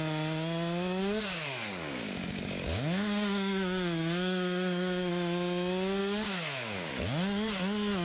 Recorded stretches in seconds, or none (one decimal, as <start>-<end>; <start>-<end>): 0.0-1.0; 5.1-6.0; 6.9-8.0